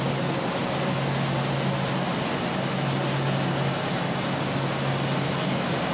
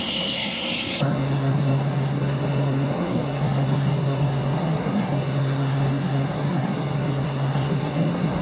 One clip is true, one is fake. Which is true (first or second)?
first